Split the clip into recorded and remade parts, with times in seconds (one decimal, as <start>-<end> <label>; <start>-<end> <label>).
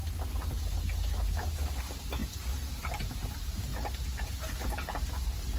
0.0-1.8 recorded; 1.8-3.7 remade; 3.7-5.6 recorded